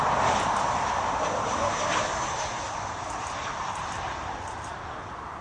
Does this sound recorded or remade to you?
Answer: recorded